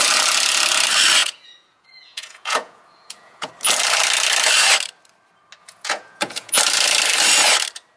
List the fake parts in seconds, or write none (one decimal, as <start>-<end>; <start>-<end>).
1.2-3.5; 5.6-6.6

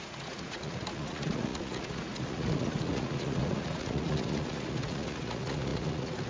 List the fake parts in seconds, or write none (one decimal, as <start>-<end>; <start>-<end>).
0.0-6.3

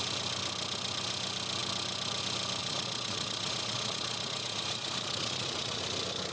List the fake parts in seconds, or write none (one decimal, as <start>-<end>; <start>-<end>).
2.6-5.8

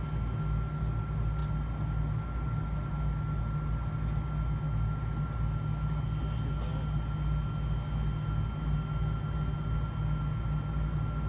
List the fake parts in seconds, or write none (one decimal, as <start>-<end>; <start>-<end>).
none

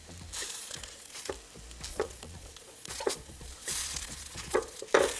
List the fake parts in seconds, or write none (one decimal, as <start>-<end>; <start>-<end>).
0.4-1.3; 1.9-4.8

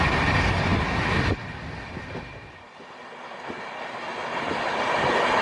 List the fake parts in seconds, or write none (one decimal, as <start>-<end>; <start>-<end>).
none

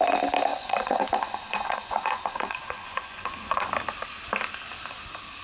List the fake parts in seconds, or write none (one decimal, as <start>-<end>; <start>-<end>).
0.5-3.7

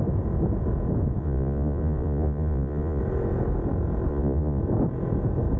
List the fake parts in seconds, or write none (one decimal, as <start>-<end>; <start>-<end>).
1.2-3.0; 4.1-4.6